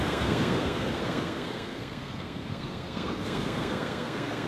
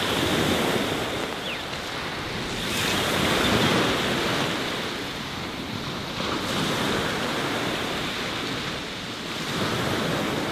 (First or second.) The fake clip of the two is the first